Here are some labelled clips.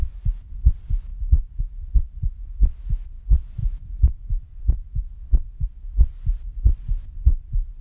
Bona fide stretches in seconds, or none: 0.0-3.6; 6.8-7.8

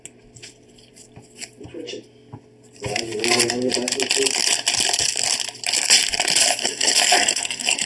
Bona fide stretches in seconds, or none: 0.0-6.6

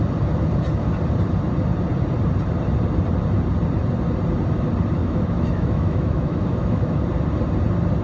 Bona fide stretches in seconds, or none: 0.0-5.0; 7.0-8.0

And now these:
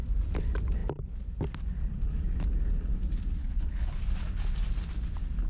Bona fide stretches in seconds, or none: 0.0-3.4; 4.0-5.5

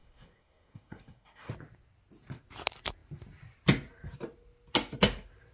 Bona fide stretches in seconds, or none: 1.5-5.5

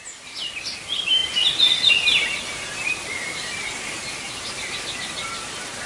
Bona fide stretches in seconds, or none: 0.0-5.9

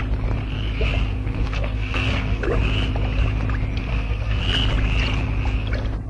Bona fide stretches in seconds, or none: 0.0-1.1; 2.4-3.9; 4.4-6.1